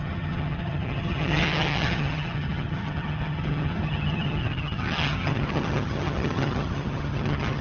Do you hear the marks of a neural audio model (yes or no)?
yes